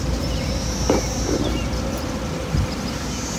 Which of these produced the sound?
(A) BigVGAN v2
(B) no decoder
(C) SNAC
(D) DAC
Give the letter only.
B